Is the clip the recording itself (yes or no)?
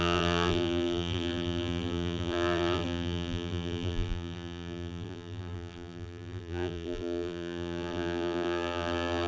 no